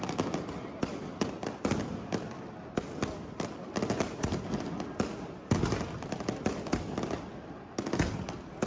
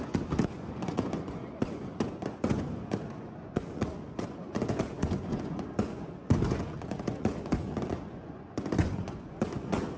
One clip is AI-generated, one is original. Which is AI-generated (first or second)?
second